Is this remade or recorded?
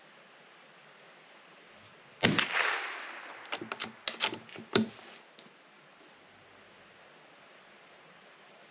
recorded